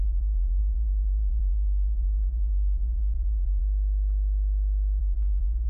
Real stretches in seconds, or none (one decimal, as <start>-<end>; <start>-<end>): 3.6-5.0